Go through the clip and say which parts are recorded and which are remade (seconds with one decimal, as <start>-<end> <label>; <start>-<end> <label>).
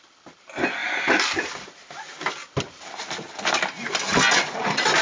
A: 0.0-5.0 recorded